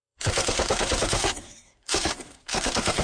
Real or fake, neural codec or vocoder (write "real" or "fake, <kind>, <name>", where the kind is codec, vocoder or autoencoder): fake, codec, SNAC